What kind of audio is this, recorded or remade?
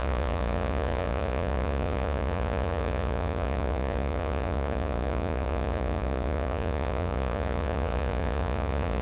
remade